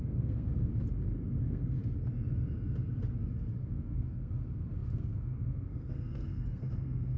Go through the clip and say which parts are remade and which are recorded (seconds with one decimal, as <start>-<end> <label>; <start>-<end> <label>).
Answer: 0.0-0.7 remade; 0.7-1.4 recorded; 1.4-1.8 remade; 1.8-3.6 recorded; 3.6-7.2 remade

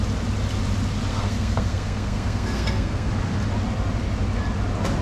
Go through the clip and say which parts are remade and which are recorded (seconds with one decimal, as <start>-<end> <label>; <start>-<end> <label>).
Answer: 0.0-1.1 recorded; 1.1-3.1 remade; 3.1-5.0 recorded

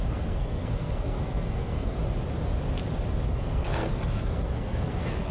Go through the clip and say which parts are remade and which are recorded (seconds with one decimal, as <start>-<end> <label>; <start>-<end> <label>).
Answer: 0.0-2.0 remade; 2.0-3.3 recorded; 3.3-5.3 remade